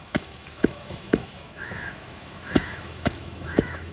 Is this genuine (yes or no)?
no